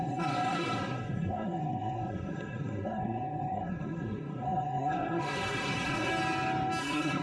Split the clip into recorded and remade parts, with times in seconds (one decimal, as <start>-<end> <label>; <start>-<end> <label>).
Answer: 0.0-6.1 remade; 6.1-6.8 recorded; 6.8-7.2 remade